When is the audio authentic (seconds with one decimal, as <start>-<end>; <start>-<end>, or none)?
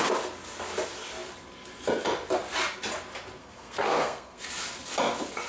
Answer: 0.0-3.4; 4.4-5.5